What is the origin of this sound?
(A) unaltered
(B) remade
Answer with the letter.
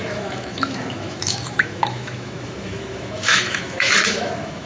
B